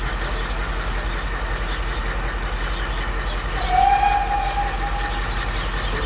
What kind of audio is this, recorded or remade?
recorded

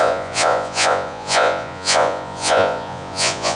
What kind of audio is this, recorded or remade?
remade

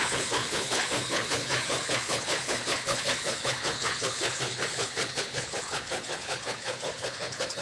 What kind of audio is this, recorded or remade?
remade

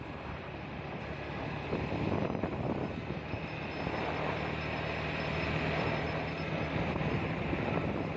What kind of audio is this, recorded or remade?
remade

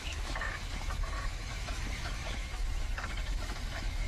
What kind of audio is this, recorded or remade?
remade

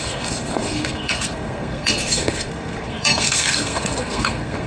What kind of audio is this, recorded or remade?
remade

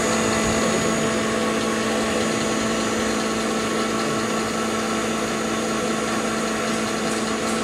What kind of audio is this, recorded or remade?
recorded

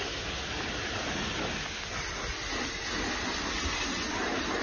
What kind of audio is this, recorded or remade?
recorded